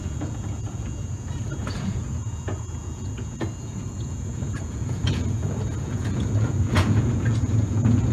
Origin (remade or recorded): remade